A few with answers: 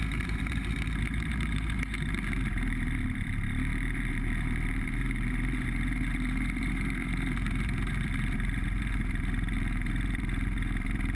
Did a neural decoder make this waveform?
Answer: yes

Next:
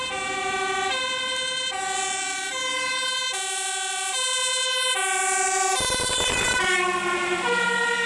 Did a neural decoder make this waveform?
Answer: yes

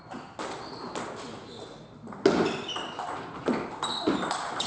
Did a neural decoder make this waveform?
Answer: no